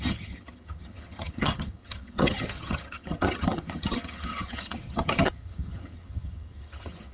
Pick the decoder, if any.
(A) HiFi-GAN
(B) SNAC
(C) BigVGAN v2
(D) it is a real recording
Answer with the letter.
A